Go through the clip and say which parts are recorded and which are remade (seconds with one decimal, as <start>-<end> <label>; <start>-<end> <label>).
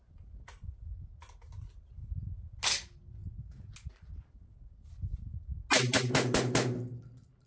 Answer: 0.0-3.2 recorded; 3.2-3.7 remade; 3.7-7.5 recorded